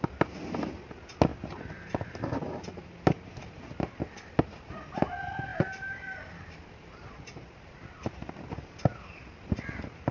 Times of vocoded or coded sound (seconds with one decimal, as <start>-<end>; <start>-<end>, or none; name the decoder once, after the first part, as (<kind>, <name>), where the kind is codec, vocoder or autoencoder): 1.3-2.4 (vocoder, BigVGAN v2); 5.5-7.7